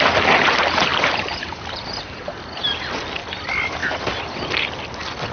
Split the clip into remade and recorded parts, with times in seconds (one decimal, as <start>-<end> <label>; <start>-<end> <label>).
0.0-5.3 recorded